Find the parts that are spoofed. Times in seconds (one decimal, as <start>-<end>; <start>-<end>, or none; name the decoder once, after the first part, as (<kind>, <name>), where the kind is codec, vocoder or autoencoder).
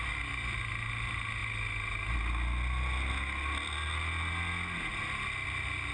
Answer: none